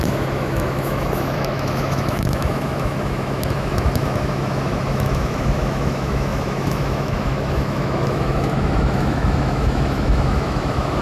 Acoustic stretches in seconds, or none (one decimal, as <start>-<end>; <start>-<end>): none